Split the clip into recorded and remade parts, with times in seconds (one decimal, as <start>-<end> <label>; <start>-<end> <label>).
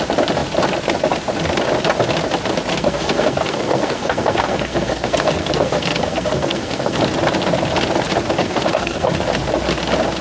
0.0-2.7 recorded; 2.7-7.0 remade; 7.0-8.4 recorded; 8.4-9.1 remade; 9.1-10.2 recorded